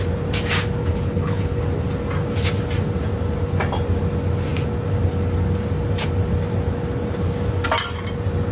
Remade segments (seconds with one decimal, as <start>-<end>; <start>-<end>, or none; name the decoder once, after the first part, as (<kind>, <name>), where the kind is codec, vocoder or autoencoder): 0.8-1.6 (codec, HILCodec)